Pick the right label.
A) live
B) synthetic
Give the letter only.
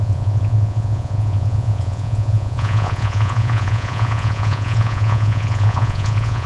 B